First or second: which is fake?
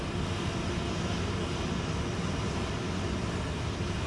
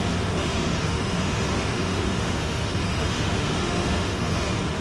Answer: second